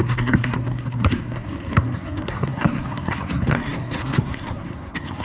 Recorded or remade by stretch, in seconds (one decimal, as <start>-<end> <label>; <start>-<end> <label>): 0.0-5.2 remade